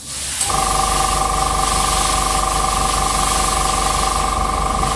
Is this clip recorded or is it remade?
recorded